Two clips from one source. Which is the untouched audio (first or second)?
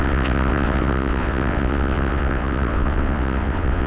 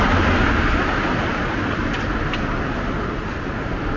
second